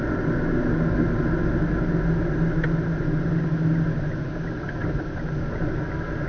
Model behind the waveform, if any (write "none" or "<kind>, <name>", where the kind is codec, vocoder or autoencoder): none